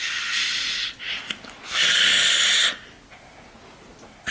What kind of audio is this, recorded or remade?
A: recorded